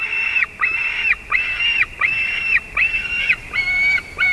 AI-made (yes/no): no